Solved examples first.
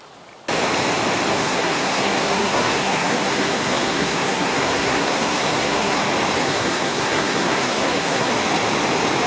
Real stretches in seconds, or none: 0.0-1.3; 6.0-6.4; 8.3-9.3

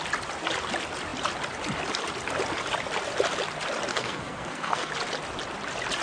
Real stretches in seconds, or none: 0.0-3.9; 4.9-6.0

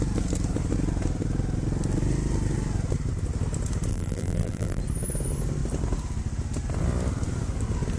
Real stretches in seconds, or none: 0.0-3.9; 4.8-8.0

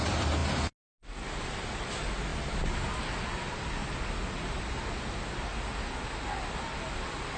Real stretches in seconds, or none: 0.0-7.4

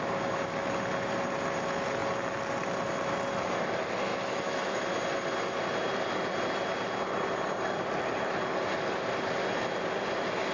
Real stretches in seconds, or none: 0.0-4.1; 4.8-10.5

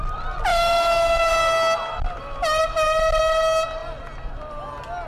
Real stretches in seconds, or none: 0.0-0.5; 1.3-5.1

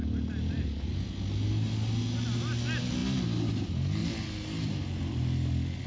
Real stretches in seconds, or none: 0.0-5.9

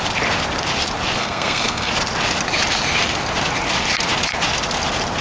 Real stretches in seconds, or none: 0.0-1.2; 1.9-5.2